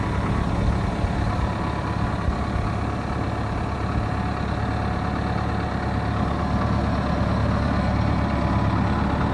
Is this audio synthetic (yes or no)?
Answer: no